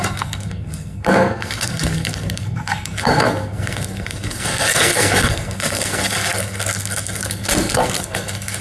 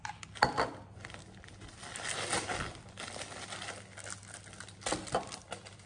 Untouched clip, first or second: second